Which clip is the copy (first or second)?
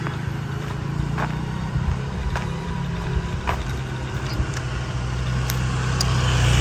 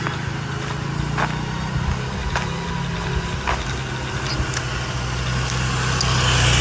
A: first